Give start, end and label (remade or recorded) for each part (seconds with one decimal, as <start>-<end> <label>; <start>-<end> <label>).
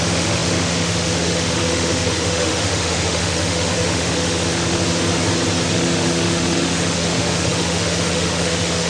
0.0-4.8 remade; 4.8-5.7 recorded; 5.7-8.9 remade